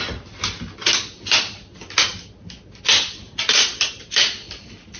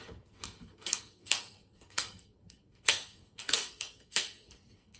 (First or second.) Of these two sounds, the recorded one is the first